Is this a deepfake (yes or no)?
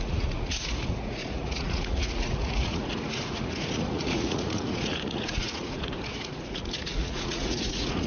yes